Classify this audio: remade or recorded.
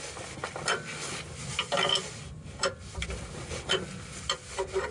recorded